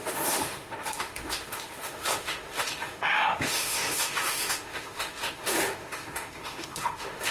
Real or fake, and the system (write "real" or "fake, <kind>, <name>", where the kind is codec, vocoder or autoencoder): fake, autoencoder, DAC-VAE